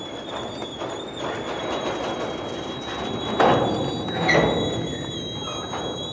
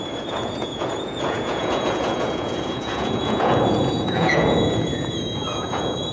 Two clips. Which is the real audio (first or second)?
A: first